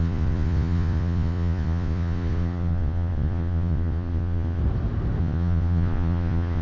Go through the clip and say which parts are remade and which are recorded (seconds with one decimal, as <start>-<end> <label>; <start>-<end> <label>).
0.0-4.6 remade; 4.6-5.2 recorded; 5.2-6.6 remade